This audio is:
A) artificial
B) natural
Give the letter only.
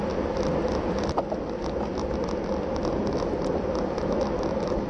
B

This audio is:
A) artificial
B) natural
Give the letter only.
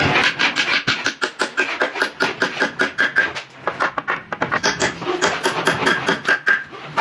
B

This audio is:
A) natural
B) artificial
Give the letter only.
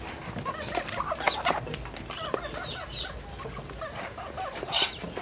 A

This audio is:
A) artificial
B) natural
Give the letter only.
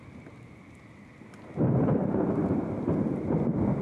B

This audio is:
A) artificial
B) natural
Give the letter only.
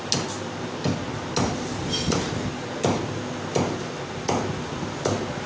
B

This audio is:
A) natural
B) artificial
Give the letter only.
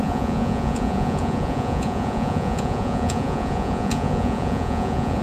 B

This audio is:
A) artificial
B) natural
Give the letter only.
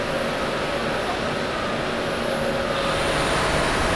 B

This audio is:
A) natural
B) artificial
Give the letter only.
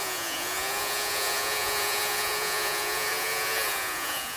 B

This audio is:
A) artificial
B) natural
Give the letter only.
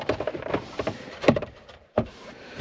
A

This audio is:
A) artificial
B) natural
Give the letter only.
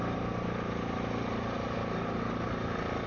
B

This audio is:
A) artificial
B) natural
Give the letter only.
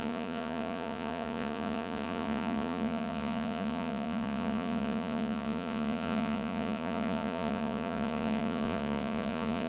A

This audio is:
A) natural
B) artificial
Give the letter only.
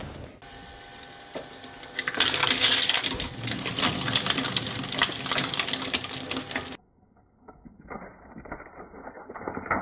A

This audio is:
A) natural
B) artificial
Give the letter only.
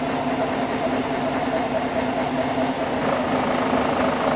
A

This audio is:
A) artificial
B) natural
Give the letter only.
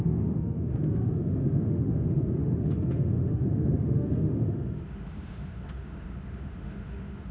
A